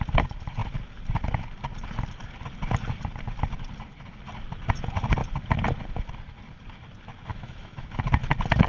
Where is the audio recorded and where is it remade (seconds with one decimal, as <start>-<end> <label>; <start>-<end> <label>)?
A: 0.0-7.3 recorded; 7.3-8.0 remade; 8.0-8.7 recorded